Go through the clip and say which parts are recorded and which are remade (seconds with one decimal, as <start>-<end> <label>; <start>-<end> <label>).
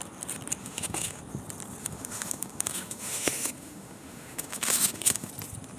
0.0-0.6 recorded; 0.6-1.2 remade; 1.2-1.8 recorded; 1.8-5.3 remade; 5.3-5.8 recorded